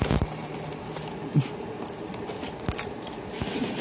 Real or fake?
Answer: fake